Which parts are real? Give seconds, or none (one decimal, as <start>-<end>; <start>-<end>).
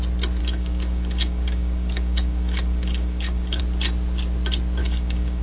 0.0-0.4; 3.6-4.8